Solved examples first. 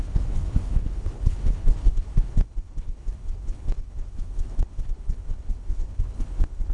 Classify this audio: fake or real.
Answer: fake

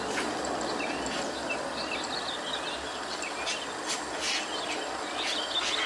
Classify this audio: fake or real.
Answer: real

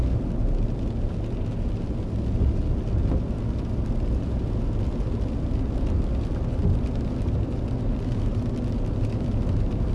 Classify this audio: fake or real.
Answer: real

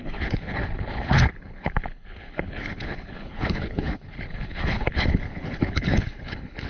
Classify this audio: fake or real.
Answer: fake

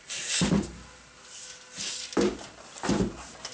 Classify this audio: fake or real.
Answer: real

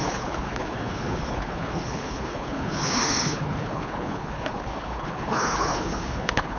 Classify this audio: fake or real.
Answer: fake